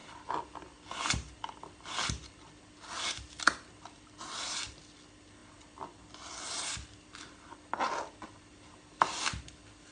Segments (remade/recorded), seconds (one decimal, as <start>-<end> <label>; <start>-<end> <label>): 0.0-9.9 recorded